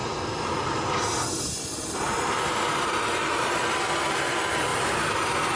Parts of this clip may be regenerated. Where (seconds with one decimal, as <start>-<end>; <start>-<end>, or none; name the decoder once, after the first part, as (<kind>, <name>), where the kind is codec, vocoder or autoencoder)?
none